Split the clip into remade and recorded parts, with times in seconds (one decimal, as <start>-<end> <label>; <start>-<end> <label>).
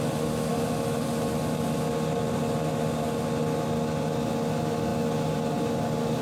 0.0-6.2 recorded